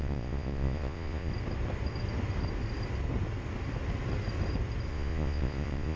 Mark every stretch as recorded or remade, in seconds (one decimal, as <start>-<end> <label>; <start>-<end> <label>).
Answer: 0.0-1.3 remade; 1.3-4.9 recorded; 4.9-6.0 remade

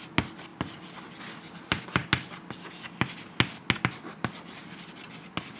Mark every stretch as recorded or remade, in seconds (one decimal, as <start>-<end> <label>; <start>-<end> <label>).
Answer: 0.0-5.6 recorded

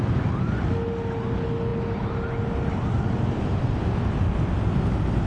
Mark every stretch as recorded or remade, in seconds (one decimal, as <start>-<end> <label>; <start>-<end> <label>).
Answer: 0.0-5.3 recorded

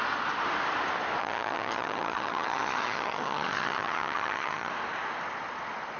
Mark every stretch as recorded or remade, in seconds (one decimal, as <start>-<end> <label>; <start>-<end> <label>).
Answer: 0.0-1.2 recorded; 1.2-4.7 remade; 4.7-6.0 recorded

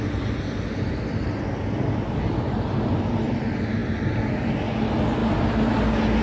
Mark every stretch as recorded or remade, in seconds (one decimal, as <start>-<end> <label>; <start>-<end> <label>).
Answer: 0.0-5.2 recorded; 5.2-5.8 remade; 5.8-6.2 recorded

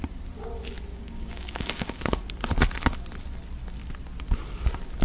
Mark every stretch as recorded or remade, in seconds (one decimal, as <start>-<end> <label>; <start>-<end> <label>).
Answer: 0.0-0.9 recorded; 0.9-2.0 remade; 2.0-5.0 recorded

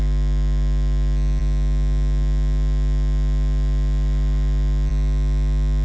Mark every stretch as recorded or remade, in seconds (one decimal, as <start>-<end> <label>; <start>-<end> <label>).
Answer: 0.0-5.8 recorded